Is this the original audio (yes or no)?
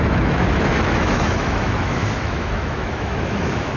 no